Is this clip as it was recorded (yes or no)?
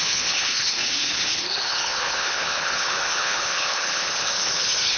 no